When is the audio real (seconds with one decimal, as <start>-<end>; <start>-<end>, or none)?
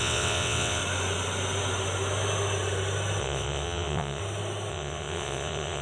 0.8-3.2; 4.2-4.7